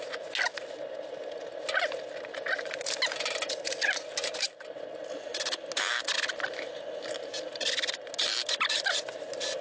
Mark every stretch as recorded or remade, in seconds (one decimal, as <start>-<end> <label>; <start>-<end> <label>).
0.0-9.6 recorded